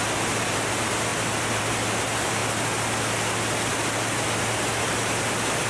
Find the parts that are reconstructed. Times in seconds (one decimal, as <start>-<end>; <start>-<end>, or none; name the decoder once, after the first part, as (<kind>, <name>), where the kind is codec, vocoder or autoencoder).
none